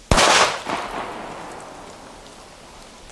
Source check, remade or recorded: recorded